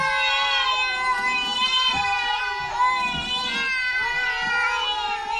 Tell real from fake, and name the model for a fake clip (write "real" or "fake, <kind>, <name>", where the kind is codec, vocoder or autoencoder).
real